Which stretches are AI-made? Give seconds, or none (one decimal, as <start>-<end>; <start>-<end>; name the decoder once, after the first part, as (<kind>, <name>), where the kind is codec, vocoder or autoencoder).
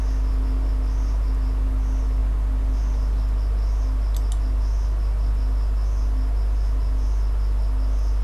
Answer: none